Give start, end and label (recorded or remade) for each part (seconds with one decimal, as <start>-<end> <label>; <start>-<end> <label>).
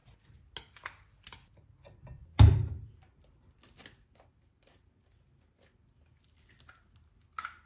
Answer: 0.0-7.7 recorded